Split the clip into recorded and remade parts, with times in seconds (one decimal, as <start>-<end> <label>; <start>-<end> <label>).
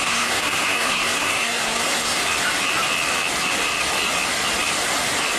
0.0-2.2 remade; 2.2-5.4 recorded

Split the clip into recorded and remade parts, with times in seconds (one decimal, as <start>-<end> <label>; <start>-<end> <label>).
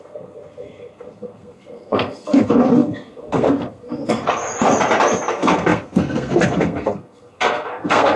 0.0-4.5 remade; 4.5-5.3 recorded; 5.3-8.2 remade